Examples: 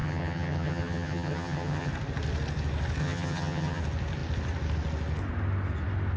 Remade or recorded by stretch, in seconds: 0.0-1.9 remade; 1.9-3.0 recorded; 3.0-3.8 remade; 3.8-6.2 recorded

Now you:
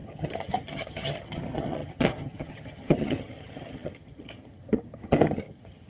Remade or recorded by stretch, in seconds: 0.0-5.9 remade